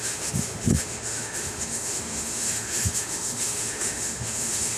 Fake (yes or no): yes